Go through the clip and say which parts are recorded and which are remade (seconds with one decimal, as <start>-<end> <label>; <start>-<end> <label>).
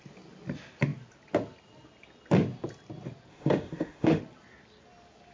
0.0-3.3 recorded; 3.3-4.2 remade; 4.2-5.3 recorded